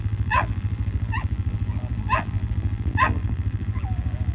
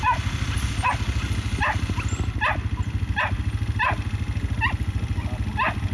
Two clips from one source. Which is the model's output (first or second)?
first